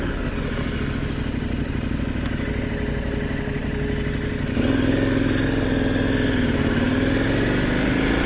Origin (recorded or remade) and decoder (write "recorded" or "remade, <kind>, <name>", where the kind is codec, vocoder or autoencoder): recorded